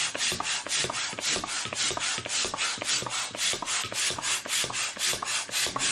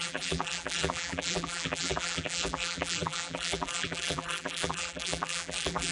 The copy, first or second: second